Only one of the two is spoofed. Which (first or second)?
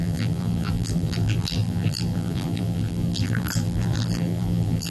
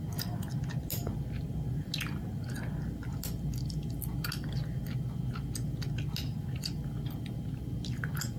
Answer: first